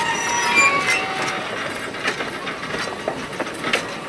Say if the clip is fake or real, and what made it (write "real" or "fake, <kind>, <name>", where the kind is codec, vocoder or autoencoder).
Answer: real